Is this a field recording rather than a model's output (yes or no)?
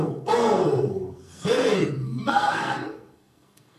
no